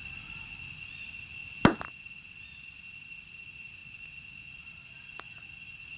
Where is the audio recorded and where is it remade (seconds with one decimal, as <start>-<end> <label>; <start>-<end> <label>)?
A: 0.0-6.0 recorded